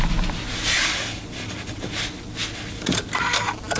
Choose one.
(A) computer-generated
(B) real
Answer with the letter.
B